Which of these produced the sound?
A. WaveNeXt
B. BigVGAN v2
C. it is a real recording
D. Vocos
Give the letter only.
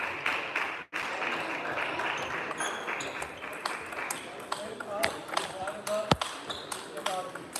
C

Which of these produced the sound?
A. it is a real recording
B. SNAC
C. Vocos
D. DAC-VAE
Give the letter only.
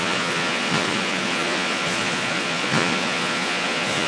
C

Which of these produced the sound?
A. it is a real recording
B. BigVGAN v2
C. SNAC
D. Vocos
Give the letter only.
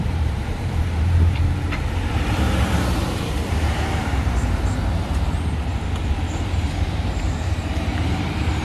B